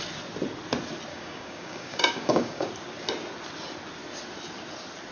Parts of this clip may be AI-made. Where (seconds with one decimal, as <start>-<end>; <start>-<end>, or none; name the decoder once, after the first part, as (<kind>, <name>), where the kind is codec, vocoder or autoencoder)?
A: 1.1-2.7 (codec, DAC)